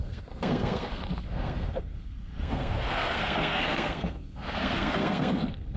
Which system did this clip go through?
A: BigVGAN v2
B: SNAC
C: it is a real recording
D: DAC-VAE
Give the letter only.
B